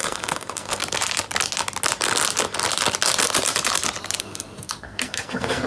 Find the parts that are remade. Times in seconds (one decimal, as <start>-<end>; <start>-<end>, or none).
0.0-0.8; 4.2-5.7